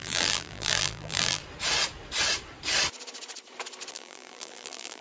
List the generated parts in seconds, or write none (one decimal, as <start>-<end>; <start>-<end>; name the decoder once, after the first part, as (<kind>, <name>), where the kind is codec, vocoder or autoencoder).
0.0-1.4 (vocoder, BigVGAN v2); 3.9-5.0